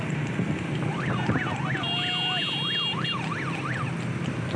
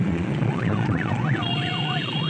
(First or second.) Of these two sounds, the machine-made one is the second